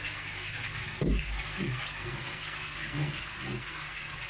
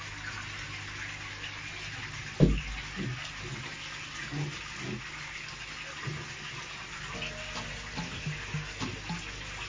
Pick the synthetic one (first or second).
first